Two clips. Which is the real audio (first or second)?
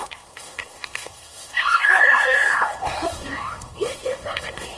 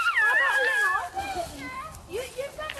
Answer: second